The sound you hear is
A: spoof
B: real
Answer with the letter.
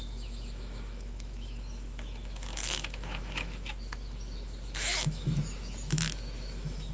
A